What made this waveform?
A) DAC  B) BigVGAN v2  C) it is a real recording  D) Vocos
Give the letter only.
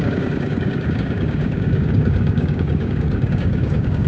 A